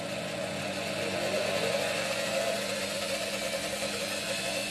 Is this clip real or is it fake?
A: fake